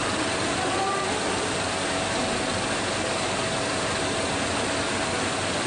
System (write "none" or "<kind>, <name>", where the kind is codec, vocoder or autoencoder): none